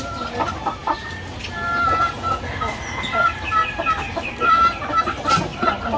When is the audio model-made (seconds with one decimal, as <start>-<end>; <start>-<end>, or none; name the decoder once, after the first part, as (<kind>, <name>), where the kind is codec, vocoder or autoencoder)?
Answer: none